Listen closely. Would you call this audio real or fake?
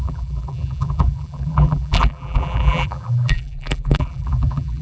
fake